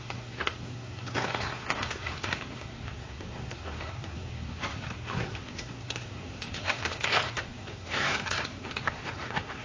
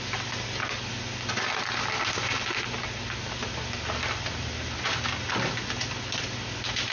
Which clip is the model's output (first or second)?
first